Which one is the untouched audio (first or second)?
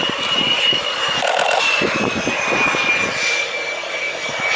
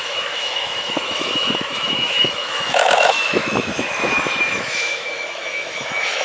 first